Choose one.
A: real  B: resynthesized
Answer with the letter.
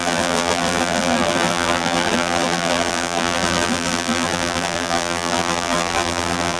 B